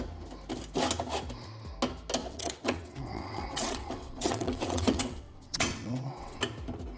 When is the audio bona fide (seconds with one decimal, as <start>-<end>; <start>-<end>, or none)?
0.0-2.2; 6.4-7.0